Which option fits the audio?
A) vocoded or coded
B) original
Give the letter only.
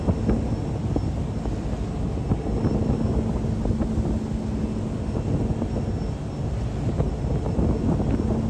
B